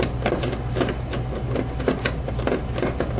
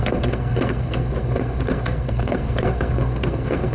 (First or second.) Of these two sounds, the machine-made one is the second